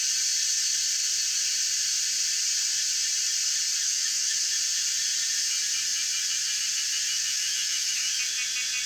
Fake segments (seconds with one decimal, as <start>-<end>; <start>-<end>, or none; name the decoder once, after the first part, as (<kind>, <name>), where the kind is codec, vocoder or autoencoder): 3.8-4.5 (autoencoder, DAC-VAE); 7.1-8.2